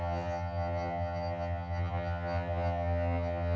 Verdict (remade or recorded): remade